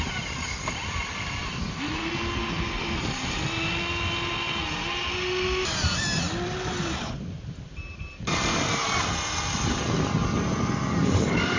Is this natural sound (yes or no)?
yes